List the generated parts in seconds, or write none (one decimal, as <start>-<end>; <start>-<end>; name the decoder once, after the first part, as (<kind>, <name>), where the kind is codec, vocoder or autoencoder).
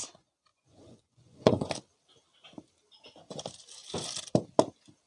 0.5-1.7 (vocoder, Vocos)